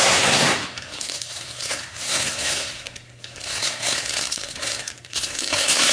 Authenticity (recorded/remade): remade